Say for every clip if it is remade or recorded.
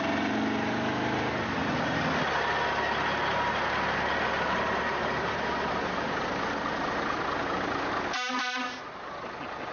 recorded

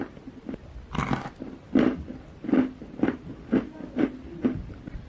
recorded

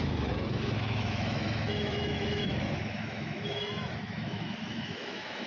remade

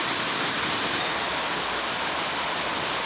recorded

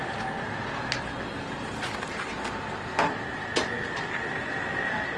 recorded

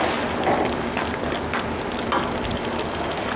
recorded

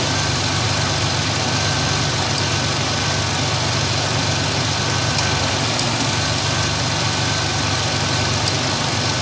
recorded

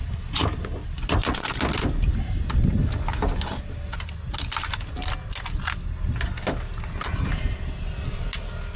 recorded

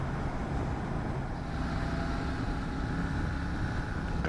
recorded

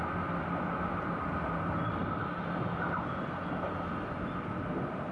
recorded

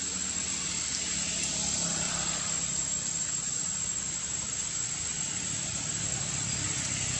remade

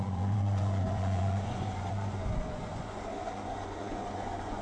remade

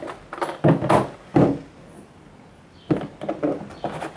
recorded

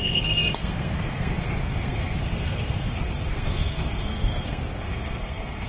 remade